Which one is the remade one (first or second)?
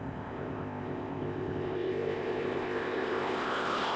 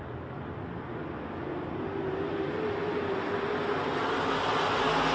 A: first